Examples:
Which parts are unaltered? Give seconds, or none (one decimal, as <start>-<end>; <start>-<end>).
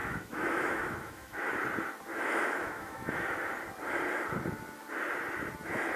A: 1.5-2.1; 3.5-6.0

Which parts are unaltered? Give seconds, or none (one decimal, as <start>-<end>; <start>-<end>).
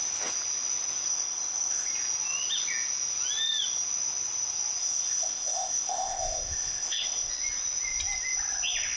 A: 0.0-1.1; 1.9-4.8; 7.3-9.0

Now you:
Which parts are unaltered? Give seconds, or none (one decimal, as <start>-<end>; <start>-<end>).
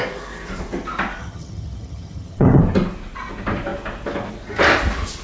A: 0.0-1.2; 2.6-5.2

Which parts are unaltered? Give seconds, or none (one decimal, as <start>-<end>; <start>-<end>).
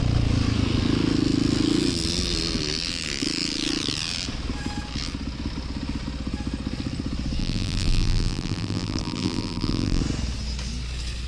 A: 0.0-7.4; 10.0-11.3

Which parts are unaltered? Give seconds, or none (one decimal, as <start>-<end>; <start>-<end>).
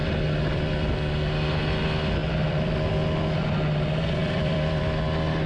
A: 0.9-2.2; 2.9-4.2; 4.8-5.5